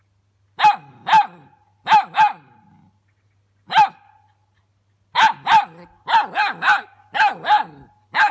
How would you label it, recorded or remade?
recorded